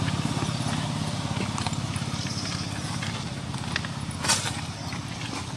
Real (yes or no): yes